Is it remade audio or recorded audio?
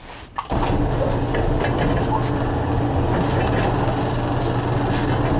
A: recorded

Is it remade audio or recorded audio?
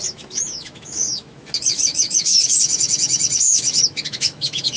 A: remade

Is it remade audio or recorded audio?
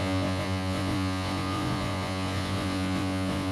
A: remade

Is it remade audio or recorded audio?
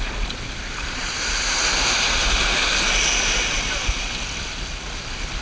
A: recorded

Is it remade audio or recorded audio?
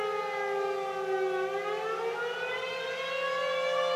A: recorded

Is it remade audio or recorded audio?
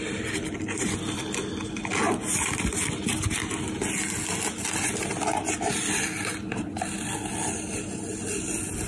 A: recorded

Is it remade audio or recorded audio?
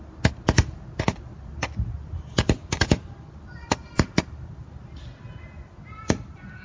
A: recorded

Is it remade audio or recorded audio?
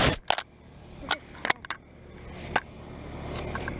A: recorded